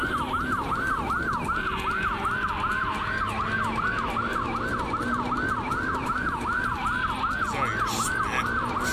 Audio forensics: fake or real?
real